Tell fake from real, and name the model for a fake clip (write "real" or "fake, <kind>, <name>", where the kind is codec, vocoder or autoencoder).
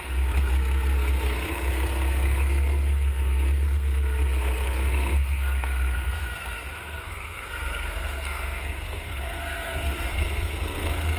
fake, codec, SNAC